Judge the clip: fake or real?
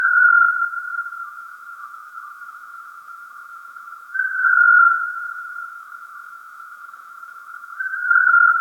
fake